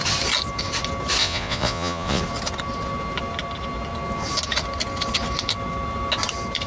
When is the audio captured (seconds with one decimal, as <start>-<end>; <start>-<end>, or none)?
0.0-1.2; 2.2-6.7